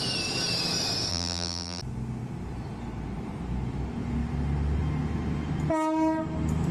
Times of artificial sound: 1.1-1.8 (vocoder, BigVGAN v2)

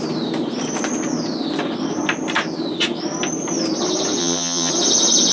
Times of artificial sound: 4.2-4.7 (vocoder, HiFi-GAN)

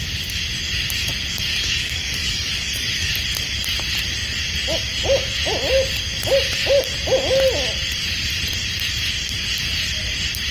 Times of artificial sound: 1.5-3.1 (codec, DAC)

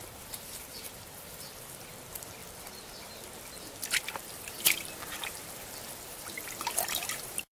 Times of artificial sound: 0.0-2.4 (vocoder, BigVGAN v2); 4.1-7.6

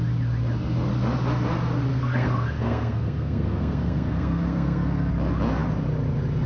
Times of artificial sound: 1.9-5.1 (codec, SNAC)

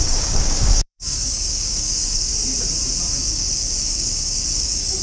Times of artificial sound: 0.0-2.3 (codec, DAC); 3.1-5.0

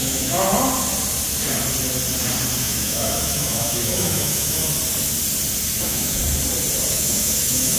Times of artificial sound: 0.0-0.5 (autoencoder, DAC-VAE); 2.6-4.6; 5.8-6.2; 6.9-7.8

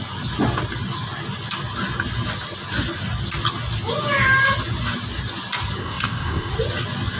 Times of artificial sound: 5.8-6.5 (codec, ZipCodec)